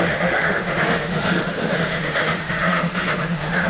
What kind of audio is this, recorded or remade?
remade